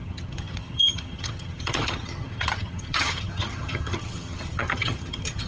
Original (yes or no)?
no